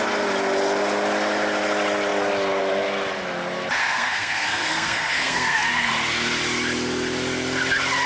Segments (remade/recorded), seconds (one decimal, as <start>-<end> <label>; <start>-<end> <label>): 0.0-3.8 recorded; 3.8-5.9 remade; 5.9-8.1 recorded

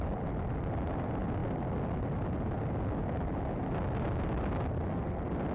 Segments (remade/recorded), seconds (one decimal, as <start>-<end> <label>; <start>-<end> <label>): 0.0-5.5 recorded